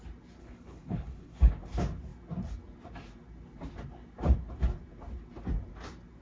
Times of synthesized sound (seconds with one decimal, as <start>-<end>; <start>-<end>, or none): 0.4-1.5